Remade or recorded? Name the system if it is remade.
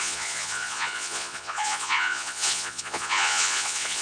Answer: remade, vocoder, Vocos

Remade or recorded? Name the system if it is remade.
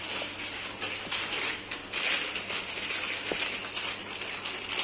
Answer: recorded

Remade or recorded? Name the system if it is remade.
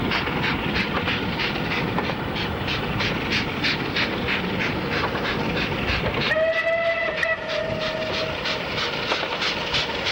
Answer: recorded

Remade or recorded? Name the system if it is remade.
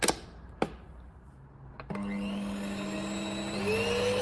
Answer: recorded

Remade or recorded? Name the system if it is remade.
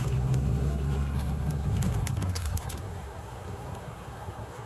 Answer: remade, codec, SNAC